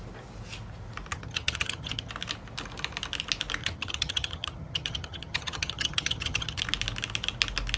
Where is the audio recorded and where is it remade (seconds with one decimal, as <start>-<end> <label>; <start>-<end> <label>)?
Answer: 0.0-1.1 recorded; 1.1-2.1 remade; 2.1-3.6 recorded; 3.6-6.6 remade; 6.6-7.8 recorded